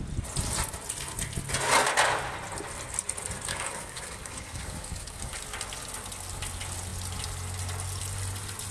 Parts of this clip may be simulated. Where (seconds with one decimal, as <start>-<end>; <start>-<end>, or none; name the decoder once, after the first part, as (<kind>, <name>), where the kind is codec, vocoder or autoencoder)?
3.5-5.4 (codec, DAC)